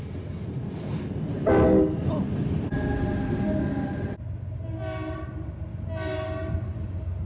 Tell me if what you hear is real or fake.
real